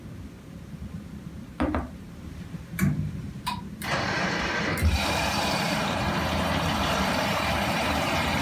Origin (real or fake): fake